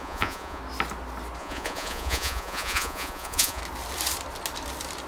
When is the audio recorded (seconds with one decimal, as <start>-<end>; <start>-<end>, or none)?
0.6-1.4; 3.6-5.1